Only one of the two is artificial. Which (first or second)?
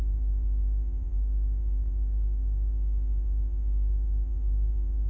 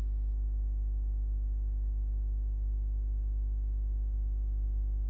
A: first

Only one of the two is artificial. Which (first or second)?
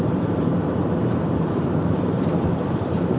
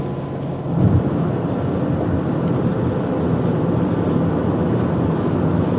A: first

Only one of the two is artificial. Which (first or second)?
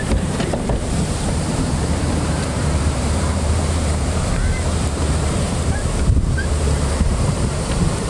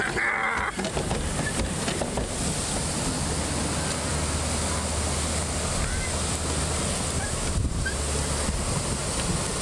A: first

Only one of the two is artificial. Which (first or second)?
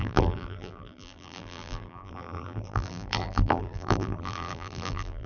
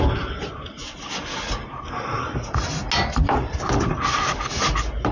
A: first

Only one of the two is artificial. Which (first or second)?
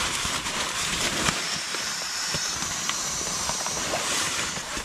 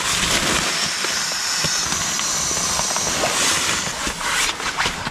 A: first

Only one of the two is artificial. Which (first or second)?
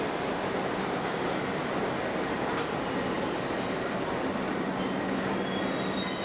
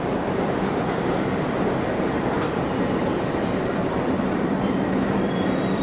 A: second